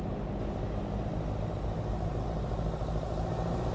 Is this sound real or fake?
real